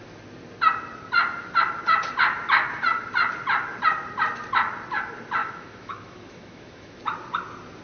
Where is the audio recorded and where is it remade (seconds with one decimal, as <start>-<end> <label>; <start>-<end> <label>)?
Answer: 0.0-5.4 recorded; 5.4-7.0 remade; 7.0-7.8 recorded